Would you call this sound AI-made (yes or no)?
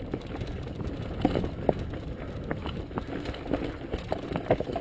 no